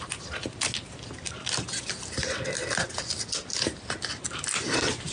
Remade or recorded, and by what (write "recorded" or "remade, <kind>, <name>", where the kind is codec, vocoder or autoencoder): recorded